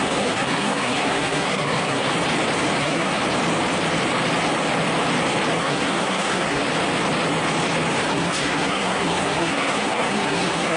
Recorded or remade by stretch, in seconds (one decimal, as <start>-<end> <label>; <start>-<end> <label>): 0.0-2.1 remade; 2.1-2.8 recorded; 2.8-3.2 remade; 3.2-5.6 recorded; 5.6-6.6 remade; 6.6-8.1 recorded; 8.1-10.8 remade

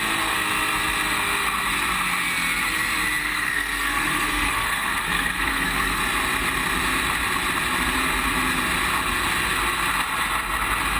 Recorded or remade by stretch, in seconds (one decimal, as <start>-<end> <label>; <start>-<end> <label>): 0.0-3.2 recorded; 3.2-6.0 remade; 6.0-11.0 recorded

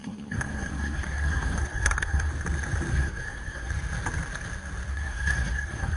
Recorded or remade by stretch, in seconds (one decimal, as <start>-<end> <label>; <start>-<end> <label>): 0.0-2.3 remade; 2.3-2.9 recorded; 2.9-3.7 remade; 3.7-4.9 recorded; 4.9-6.0 remade

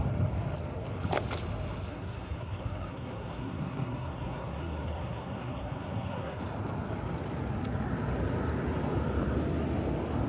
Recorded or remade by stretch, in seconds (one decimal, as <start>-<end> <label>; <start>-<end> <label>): 0.0-1.9 recorded; 1.9-6.4 remade; 6.4-10.3 recorded